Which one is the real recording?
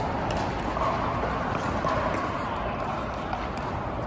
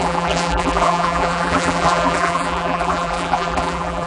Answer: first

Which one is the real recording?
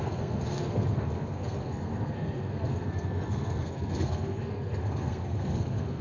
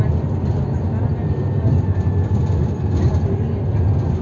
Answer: second